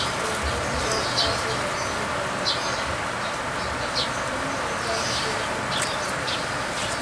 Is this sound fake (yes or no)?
no